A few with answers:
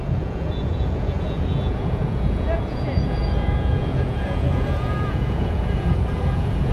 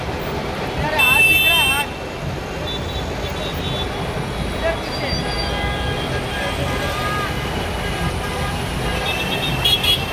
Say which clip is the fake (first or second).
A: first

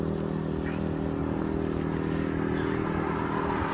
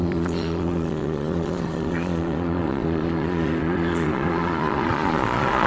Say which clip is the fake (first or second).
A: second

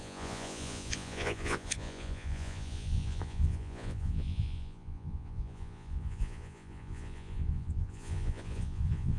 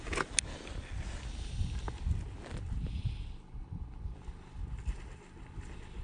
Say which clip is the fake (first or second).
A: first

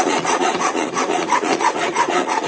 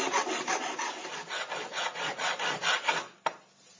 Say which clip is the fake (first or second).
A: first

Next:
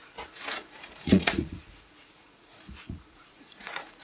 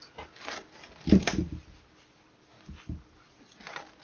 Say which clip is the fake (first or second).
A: first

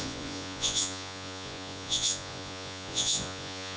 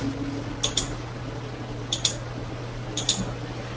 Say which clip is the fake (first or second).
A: first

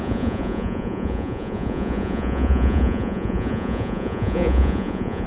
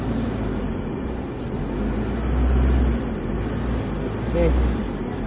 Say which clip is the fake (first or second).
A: first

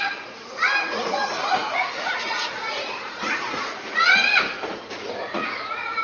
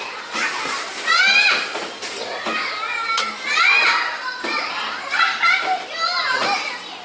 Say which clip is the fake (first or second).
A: first